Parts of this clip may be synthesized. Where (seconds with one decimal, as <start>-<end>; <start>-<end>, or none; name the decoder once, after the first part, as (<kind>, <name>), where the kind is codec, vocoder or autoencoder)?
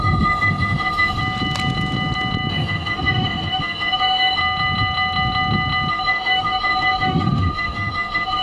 0.0-1.2 (autoencoder, DAC-VAE); 2.5-4.4; 5.9-8.4